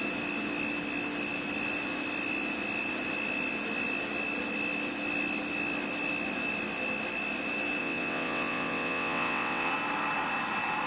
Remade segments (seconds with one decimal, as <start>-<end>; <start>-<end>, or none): 7.8-9.7